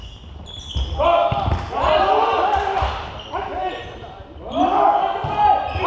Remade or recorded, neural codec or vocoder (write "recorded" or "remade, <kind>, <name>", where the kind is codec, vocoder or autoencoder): recorded